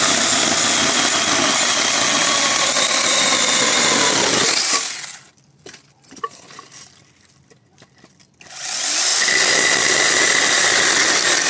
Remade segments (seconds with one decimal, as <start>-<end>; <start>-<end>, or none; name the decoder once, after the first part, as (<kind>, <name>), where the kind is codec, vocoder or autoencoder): none